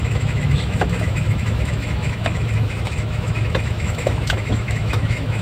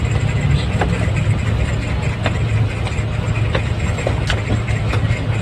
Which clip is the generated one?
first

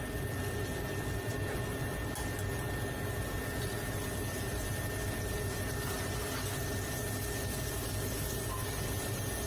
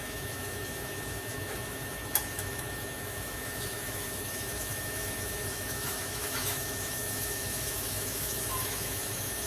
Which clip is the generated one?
second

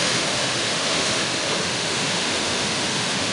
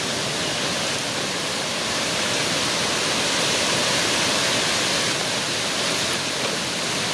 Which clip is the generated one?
first